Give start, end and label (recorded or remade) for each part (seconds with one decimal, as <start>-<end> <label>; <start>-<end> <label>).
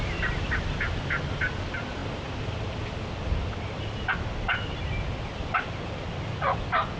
0.0-7.0 recorded